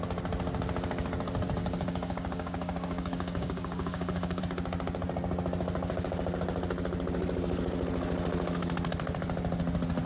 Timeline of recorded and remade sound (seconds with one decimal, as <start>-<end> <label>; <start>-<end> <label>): 0.0-1.6 recorded; 1.6-4.4 remade; 4.4-10.1 recorded

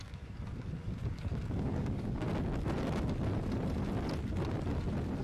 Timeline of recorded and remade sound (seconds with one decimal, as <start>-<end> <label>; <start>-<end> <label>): 0.0-2.3 remade; 2.3-5.2 recorded

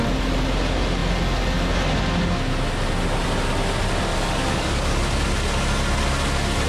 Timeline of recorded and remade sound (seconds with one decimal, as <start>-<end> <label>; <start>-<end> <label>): 0.0-4.1 recorded; 4.1-5.0 remade; 5.0-6.7 recorded

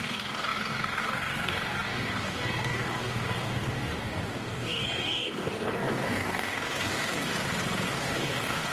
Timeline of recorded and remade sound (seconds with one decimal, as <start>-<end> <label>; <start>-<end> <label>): 0.0-7.3 remade; 7.3-7.9 recorded; 7.9-8.7 remade

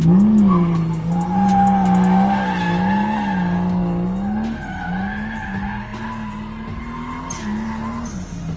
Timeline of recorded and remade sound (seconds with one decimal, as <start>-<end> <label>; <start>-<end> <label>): 0.0-8.6 recorded

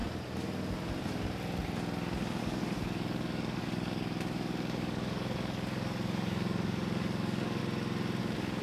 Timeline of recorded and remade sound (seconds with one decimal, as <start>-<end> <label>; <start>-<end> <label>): 0.0-2.4 recorded; 2.4-7.6 remade; 7.6-8.2 recorded; 8.2-8.6 remade